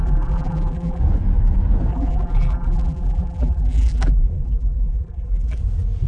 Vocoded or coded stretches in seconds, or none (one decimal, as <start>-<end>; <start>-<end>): 0.0-1.0; 1.9-5.6